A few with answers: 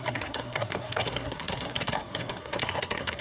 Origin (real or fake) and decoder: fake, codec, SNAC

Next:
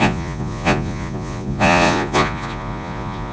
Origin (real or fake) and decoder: fake, vocoder, Vocos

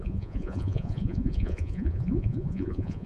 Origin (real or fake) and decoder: fake, vocoder, Vocos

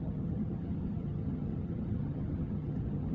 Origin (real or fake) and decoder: fake, vocoder, HiFi-GAN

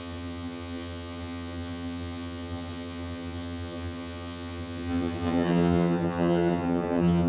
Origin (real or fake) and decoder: fake, vocoder, HiFi-GAN